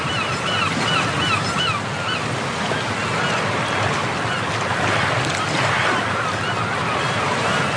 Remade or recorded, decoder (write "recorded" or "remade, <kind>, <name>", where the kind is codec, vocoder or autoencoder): recorded